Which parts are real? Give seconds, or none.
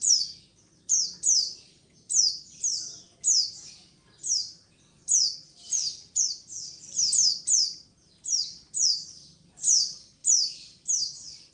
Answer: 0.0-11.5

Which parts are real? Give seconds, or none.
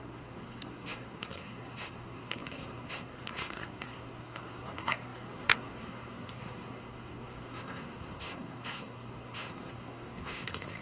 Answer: none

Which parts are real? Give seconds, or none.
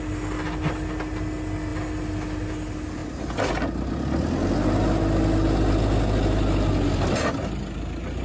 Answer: 0.0-8.2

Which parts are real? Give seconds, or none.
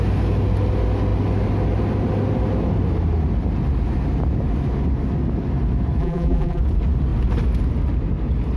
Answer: 0.0-6.0; 6.6-8.6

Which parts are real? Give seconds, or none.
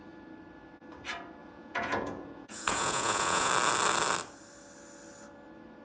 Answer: 0.0-1.4; 3.5-5.8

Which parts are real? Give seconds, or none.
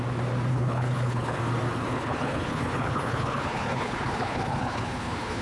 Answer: 0.0-0.5; 1.4-1.9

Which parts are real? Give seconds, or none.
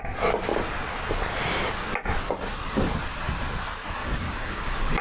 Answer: 0.0-4.0